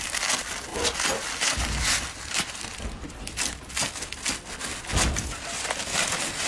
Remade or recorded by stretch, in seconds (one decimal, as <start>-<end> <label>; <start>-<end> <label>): 0.0-6.5 recorded